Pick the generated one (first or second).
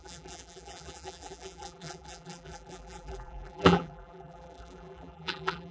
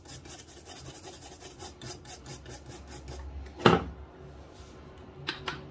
first